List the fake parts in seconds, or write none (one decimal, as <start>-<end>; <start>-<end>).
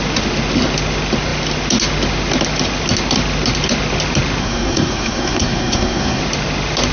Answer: 4.4-6.2